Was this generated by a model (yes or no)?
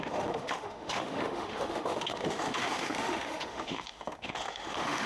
yes